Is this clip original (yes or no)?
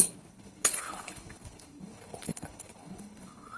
no